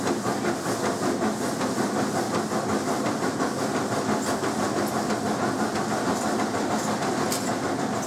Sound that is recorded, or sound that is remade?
recorded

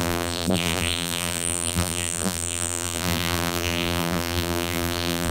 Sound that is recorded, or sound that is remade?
remade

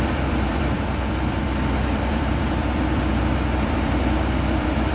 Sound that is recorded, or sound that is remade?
remade